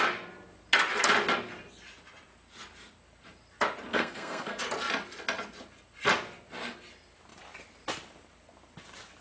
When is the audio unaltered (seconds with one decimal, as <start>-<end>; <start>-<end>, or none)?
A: 0.0-3.9; 4.6-9.2

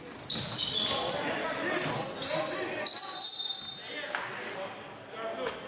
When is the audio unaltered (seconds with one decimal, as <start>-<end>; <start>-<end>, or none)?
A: 0.0-5.7

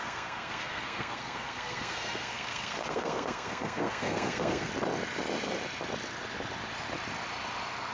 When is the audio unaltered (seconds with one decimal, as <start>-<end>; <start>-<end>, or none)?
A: 4.7-7.9

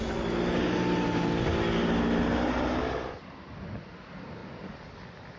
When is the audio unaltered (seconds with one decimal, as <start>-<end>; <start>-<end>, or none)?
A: 0.0-5.4

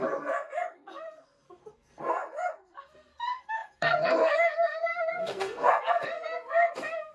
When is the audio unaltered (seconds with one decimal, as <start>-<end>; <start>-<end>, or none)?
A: none

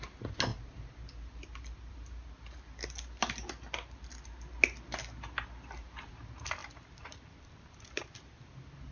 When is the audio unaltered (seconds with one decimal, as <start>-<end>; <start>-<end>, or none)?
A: 0.0-8.9

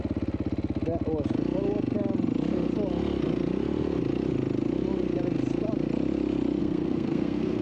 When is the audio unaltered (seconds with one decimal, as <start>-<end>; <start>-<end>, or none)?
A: 0.0-6.6

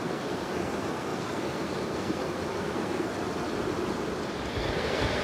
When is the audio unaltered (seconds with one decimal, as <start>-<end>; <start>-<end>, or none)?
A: 3.1-4.5